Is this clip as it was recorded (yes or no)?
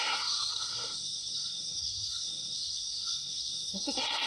no